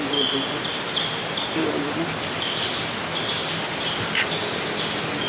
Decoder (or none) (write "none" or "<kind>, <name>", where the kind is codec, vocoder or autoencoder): none